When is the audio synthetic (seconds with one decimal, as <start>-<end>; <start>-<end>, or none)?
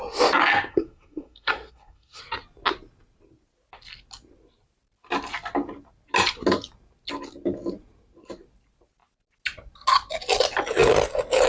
0.7-2.2